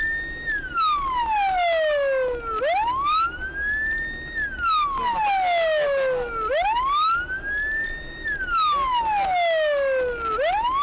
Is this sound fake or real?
real